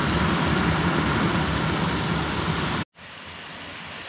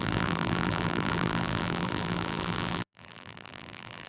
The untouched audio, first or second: first